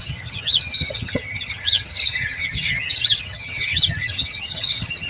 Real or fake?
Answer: fake